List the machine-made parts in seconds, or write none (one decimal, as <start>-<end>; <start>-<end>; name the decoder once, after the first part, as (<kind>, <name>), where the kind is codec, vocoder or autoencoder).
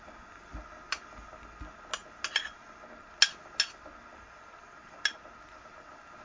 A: none